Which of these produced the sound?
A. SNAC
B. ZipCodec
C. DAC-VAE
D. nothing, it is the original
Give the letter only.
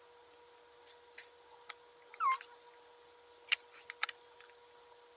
D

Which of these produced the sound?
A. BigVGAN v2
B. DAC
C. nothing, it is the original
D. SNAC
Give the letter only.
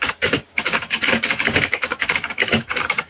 B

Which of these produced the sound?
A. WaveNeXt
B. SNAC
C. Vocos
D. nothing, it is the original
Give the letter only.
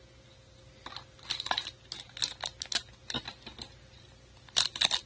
D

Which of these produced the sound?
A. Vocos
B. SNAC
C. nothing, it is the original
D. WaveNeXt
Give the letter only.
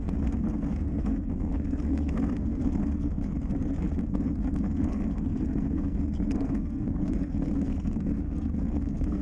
B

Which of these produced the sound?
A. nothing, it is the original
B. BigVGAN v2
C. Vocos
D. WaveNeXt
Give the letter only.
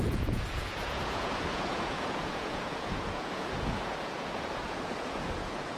C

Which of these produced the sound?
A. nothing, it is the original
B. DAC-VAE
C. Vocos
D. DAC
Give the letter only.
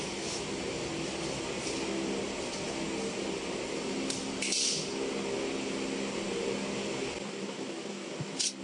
A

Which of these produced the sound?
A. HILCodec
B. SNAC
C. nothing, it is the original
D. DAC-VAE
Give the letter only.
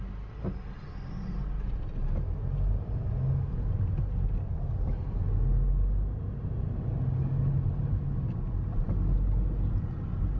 C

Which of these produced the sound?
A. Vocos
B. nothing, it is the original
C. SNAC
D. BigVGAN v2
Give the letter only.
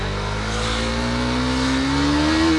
B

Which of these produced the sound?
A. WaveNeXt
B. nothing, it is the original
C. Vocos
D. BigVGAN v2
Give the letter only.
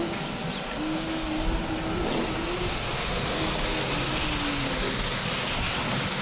B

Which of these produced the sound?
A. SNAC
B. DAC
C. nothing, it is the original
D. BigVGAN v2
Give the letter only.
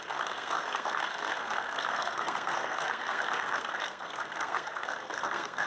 A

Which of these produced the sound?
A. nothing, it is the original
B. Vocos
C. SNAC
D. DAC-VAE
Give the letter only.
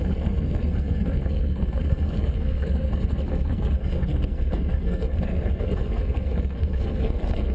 C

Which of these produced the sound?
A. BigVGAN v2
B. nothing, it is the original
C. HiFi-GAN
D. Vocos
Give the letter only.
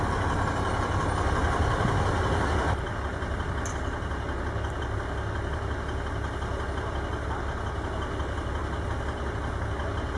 B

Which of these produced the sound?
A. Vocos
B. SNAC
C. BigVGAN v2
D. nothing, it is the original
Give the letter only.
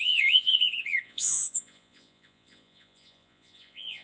A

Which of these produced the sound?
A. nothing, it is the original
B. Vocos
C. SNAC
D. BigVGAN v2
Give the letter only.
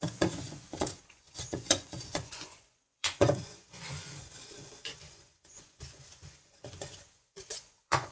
B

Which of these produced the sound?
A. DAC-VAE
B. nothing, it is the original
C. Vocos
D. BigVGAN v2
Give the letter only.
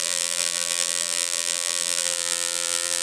D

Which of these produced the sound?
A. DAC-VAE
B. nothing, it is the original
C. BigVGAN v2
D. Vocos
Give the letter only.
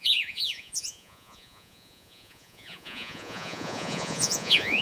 D